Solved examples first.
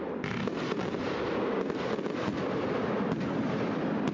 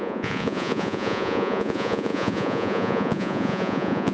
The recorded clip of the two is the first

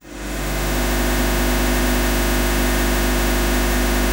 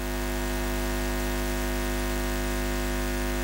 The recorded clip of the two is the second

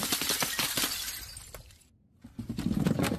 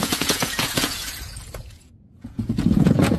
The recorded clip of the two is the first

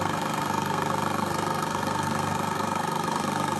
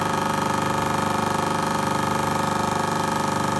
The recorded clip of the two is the second